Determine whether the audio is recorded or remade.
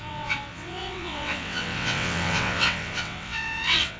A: remade